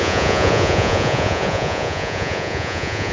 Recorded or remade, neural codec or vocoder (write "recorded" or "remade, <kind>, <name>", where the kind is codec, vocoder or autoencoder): remade, vocoder, Vocos